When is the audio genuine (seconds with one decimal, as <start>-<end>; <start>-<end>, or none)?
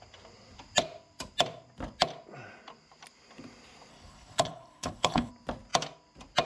0.0-3.9; 5.3-6.5